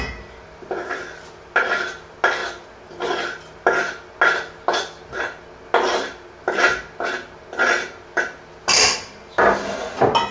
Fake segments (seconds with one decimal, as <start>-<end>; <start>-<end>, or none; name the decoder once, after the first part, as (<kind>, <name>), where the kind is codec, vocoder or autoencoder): none